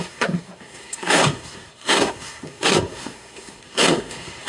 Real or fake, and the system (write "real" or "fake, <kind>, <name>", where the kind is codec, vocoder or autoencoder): fake, codec, SNAC